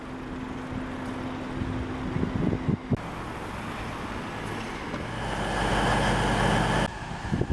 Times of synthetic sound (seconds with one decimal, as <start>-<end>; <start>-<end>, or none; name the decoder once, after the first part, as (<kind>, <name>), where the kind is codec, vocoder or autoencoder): none

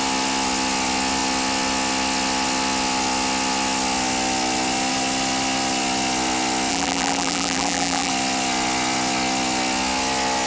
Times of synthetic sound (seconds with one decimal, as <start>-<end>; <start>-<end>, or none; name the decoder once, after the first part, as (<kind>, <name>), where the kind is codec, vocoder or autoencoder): 6.7-8.1 (vocoder, BigVGAN v2)